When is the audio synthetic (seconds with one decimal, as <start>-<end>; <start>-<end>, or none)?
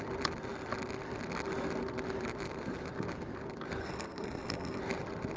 3.8-4.8